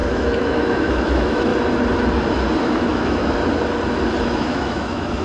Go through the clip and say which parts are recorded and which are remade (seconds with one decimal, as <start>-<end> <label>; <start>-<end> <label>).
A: 0.0-1.5 remade; 1.5-2.6 recorded; 2.6-3.2 remade; 3.2-4.2 recorded; 4.2-5.2 remade